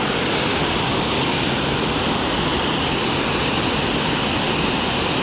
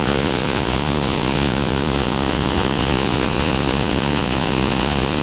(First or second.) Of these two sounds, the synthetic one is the second